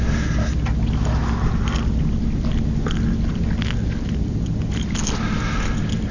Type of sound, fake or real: real